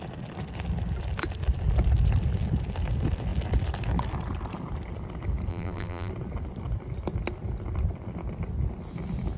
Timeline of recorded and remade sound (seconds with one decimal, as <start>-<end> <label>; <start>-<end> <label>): 0.0-5.5 recorded; 5.5-6.1 remade; 6.1-9.4 recorded